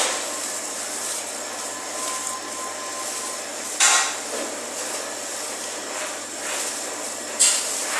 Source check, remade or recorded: recorded